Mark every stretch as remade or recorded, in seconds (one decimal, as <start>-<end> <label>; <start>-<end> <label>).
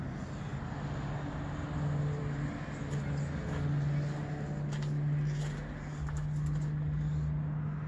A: 0.0-7.9 recorded